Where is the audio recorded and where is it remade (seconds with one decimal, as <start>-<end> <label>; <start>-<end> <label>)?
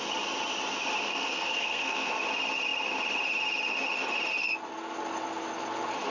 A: 0.0-1.1 recorded; 1.1-2.1 remade; 2.1-6.1 recorded